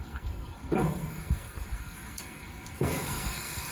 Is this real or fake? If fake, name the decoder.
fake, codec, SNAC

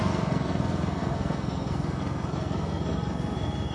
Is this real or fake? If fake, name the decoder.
fake, codec, SNAC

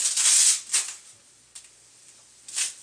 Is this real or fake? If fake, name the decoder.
real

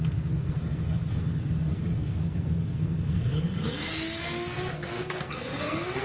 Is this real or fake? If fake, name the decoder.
fake, codec, SNAC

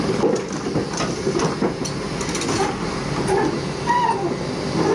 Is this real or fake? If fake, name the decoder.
real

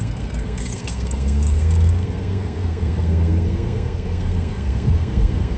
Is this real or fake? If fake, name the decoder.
fake, codec, SNAC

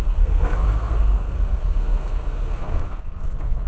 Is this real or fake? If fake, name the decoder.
fake, codec, SNAC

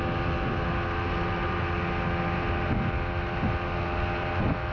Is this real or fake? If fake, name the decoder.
real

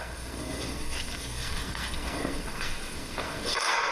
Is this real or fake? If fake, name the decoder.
fake, codec, SNAC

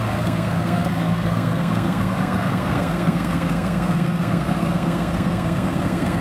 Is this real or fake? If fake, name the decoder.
fake, codec, SNAC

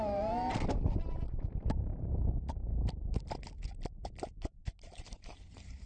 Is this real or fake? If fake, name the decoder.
real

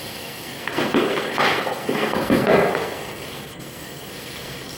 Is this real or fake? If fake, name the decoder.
fake, codec, SNAC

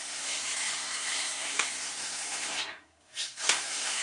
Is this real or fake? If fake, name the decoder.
fake, codec, SNAC